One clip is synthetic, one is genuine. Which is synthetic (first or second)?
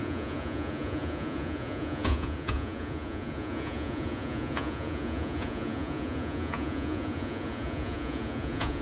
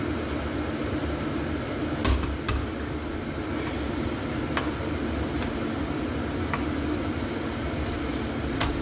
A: first